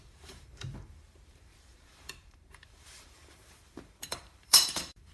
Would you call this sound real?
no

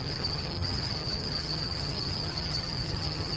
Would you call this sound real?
no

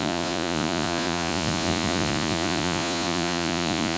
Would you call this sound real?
no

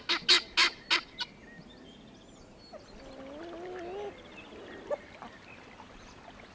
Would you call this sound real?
yes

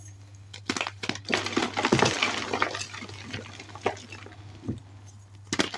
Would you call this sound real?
yes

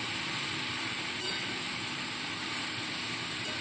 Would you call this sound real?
no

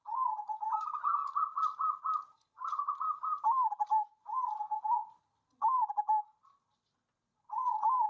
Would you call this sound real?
yes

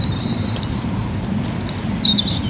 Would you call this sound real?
no